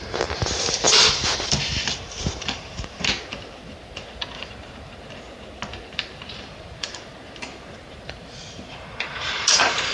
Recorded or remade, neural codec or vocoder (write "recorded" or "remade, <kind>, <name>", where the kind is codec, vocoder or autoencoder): remade, vocoder, BigVGAN v2